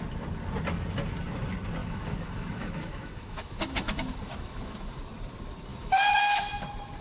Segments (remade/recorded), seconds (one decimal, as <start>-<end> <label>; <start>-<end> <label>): 0.0-1.8 recorded; 1.8-5.0 remade; 5.0-5.7 recorded; 5.7-6.6 remade; 6.6-7.0 recorded